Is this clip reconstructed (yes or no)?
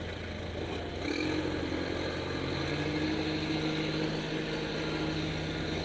no